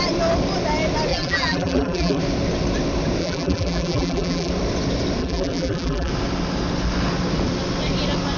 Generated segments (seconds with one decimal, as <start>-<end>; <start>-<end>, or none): 1.1-2.2; 3.2-4.5; 5.2-6.1